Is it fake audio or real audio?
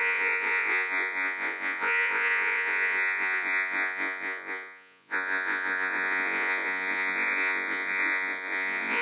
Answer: fake